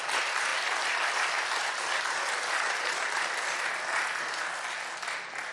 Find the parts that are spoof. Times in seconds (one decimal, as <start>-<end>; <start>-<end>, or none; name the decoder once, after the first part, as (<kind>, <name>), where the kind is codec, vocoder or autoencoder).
0.5-3.8 (vocoder, BigVGAN v2)